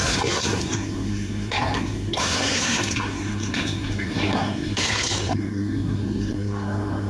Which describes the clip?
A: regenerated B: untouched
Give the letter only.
A